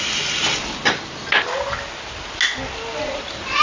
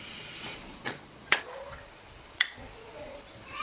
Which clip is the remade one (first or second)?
second